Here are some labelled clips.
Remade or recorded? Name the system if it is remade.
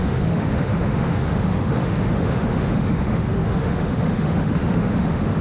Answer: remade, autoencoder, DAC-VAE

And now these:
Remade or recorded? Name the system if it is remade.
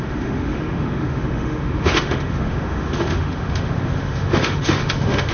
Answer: remade, autoencoder, DAC-VAE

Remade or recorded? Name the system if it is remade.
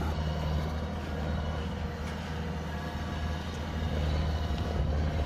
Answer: recorded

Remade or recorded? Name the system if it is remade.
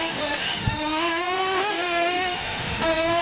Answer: remade, autoencoder, DAC-VAE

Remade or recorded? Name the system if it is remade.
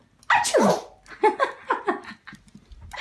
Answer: recorded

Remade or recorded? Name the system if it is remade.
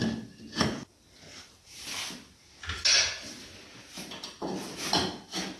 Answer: recorded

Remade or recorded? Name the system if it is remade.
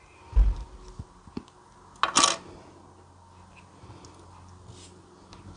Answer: recorded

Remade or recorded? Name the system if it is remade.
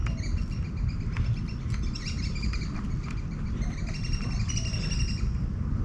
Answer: recorded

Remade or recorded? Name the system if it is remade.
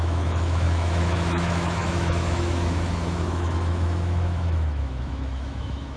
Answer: remade, autoencoder, DAC-VAE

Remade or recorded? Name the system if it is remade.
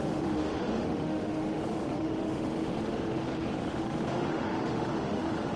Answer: remade, autoencoder, DAC-VAE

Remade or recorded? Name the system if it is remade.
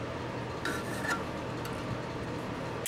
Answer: recorded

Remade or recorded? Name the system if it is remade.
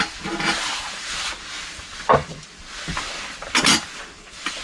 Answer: recorded